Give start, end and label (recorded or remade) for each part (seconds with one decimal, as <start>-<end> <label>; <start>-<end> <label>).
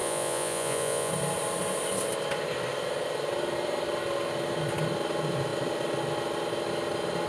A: 0.0-1.1 remade; 1.1-7.3 recorded